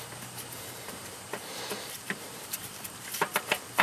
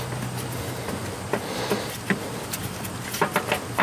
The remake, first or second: first